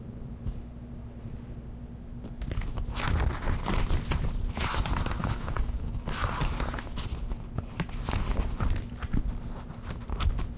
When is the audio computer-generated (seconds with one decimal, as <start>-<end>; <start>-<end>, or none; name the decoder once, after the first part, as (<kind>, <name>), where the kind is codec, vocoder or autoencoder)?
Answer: 5.2-6.5 (codec, DAC)